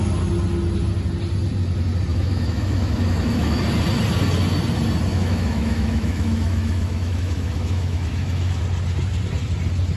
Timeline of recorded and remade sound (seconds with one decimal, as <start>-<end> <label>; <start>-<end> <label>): 0.0-2.1 recorded; 2.1-3.6 remade; 3.6-5.1 recorded; 5.1-8.6 remade; 8.6-10.0 recorded